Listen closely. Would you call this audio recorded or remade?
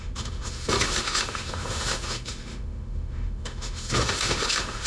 remade